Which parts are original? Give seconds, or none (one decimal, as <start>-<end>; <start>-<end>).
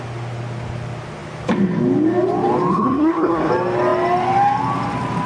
0.0-2.7; 3.5-5.3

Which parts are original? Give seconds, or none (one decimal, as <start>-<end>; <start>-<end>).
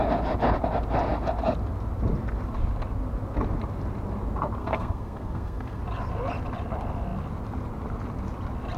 0.0-4.6; 5.8-8.8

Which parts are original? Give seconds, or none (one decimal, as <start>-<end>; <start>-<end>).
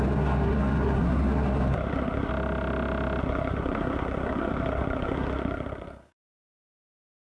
2.3-3.2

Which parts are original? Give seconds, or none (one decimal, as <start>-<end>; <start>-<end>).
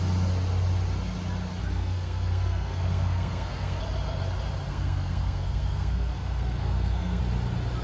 0.0-1.6; 3.8-4.7; 7.2-7.8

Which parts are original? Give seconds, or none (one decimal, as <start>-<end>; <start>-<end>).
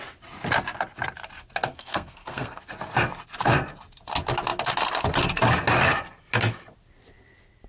0.0-1.7; 2.6-7.7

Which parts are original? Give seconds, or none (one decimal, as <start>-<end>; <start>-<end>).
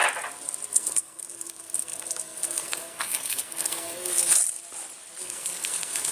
0.0-0.7; 4.4-5.2